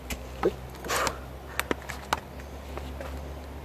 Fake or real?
real